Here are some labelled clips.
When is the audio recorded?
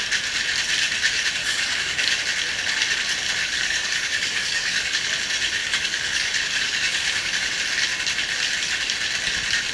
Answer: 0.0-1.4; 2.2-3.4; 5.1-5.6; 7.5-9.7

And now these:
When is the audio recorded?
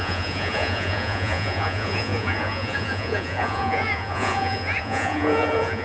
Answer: none